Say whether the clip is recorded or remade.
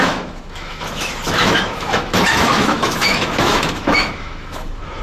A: remade